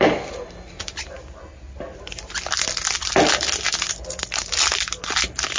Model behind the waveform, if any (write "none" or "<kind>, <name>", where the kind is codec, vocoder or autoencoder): none